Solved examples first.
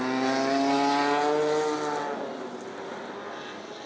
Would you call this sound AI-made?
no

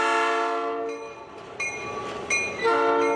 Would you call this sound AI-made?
no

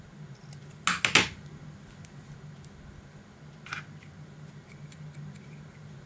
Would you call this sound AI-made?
no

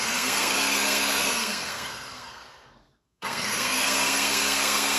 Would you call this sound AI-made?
yes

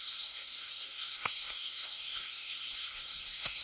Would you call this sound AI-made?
yes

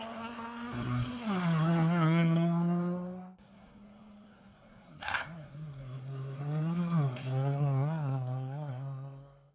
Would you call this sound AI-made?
yes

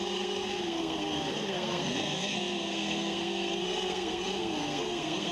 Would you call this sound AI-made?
yes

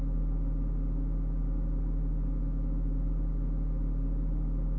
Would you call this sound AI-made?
no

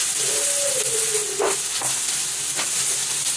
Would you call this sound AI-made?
no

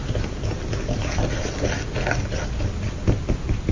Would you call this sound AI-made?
no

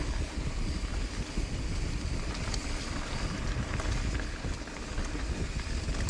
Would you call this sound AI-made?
no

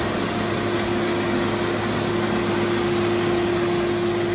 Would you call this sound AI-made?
no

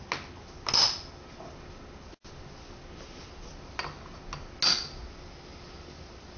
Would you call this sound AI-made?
no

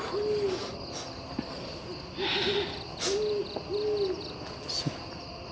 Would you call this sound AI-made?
no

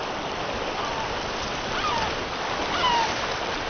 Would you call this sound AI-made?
no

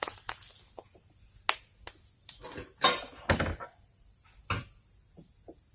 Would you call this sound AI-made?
no